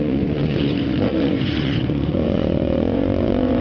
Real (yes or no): no